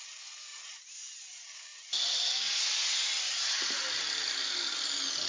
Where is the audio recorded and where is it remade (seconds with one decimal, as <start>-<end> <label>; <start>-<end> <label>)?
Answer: 0.0-5.3 recorded